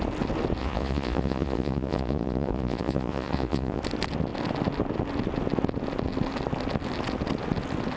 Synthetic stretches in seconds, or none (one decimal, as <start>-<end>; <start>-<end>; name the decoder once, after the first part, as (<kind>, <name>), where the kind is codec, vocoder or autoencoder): 0.6-3.8 (vocoder, Vocos)